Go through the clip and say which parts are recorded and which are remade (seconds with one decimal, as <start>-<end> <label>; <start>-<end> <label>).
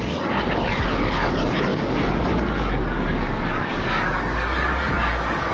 0.0-5.5 remade